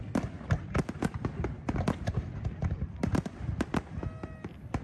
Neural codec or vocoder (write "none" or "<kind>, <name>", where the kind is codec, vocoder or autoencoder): none